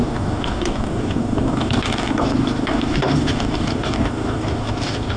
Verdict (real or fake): fake